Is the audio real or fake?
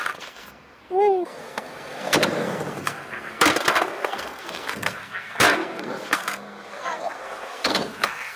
fake